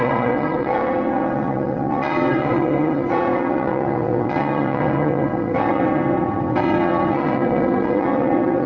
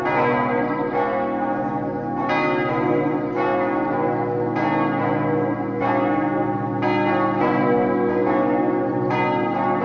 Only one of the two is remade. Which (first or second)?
first